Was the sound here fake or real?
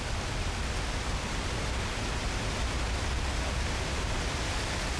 real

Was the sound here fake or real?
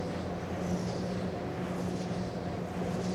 real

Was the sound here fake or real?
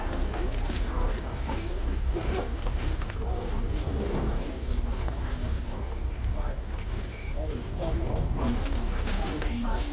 fake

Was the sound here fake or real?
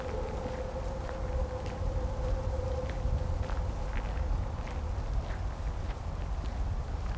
real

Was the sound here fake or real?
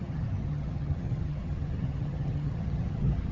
fake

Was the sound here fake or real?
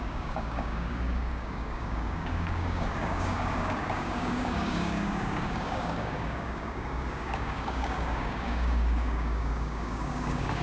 fake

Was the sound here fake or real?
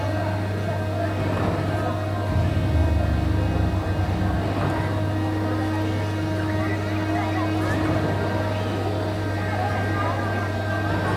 real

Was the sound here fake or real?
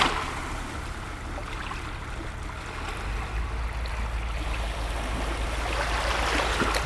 real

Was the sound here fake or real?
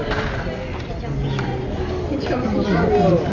real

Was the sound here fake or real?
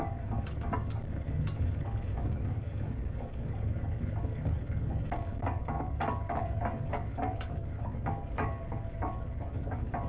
fake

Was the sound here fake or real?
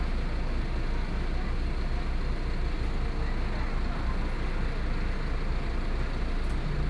real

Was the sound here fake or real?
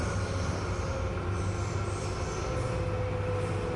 real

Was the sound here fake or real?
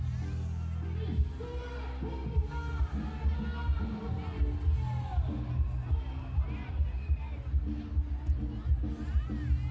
real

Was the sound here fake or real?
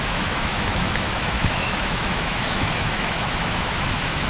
fake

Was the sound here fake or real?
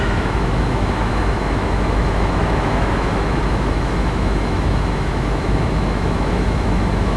fake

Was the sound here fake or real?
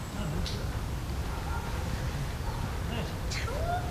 real